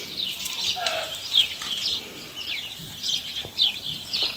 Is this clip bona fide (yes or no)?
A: yes